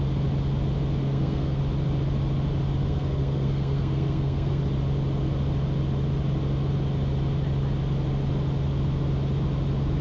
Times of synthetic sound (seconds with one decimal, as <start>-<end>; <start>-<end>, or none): 1.0-1.6; 2.8-4.6